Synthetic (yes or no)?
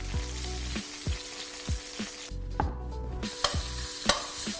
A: no